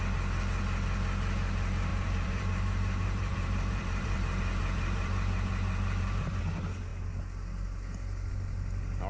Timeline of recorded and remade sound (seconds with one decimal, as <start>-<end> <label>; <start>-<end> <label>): 0.0-1.9 recorded; 1.9-6.4 remade; 6.4-9.1 recorded